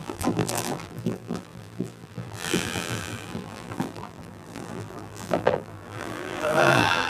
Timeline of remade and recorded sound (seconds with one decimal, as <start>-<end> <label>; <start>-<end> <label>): 0.0-7.1 remade